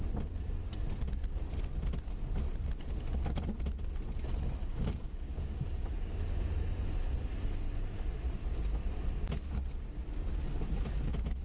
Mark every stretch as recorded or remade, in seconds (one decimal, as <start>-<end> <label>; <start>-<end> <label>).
0.0-4.7 recorded; 4.7-5.6 remade; 5.6-11.4 recorded